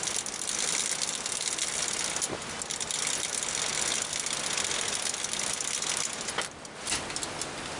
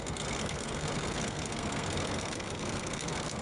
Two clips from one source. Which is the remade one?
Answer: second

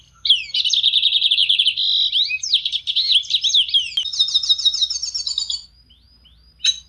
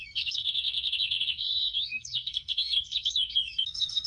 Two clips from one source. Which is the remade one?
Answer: second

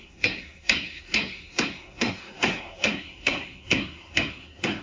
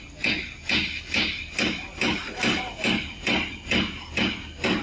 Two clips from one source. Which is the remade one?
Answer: first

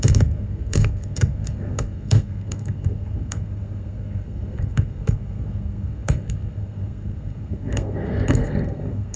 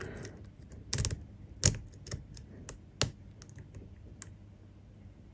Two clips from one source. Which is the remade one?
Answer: first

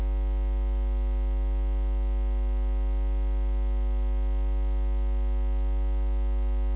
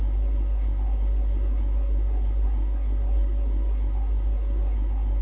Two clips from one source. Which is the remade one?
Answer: second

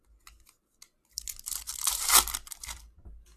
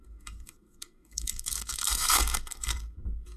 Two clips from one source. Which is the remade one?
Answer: second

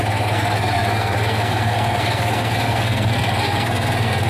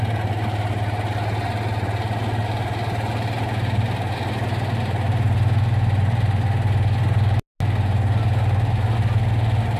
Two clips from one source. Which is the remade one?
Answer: first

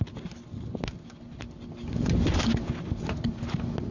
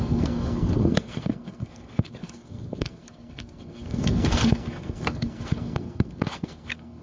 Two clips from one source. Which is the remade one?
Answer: second